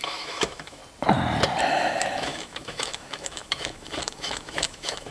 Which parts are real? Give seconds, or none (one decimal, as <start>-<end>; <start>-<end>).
0.8-1.7